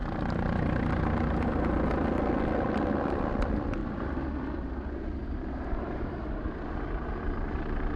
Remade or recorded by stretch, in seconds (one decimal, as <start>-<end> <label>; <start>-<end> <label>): 0.0-1.5 remade; 1.5-3.8 recorded; 3.8-8.0 remade